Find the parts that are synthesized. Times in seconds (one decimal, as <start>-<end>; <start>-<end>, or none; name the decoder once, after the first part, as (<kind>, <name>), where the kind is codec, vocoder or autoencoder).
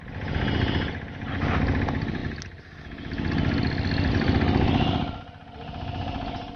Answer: none